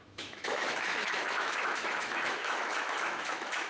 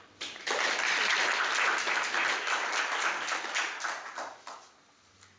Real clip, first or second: second